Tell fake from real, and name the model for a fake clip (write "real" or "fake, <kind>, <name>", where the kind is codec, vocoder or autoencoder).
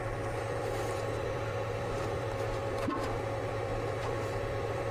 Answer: fake, vocoder, BigVGAN v2